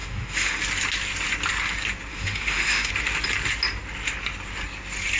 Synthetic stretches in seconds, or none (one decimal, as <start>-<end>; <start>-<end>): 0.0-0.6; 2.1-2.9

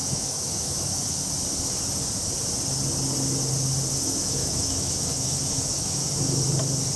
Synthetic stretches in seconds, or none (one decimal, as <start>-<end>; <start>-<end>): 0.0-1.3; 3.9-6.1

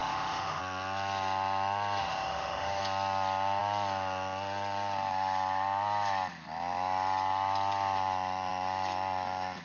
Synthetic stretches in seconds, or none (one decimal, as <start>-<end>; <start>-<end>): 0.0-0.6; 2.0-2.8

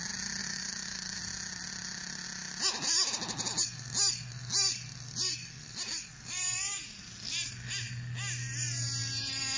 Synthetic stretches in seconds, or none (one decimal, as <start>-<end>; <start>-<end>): 0.4-1.2

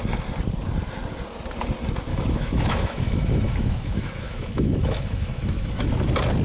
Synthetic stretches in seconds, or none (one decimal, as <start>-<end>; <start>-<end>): 2.1-5.9

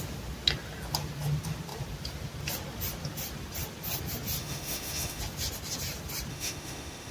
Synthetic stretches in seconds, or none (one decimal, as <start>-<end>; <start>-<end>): 4.4-5.2; 6.3-7.1

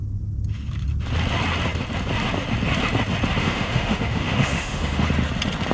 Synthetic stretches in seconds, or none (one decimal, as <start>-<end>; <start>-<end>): 3.4-5.1

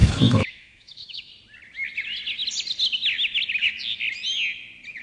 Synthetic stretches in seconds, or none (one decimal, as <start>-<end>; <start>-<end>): 0.0-1.3